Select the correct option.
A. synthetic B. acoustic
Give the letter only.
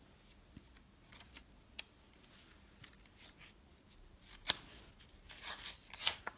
B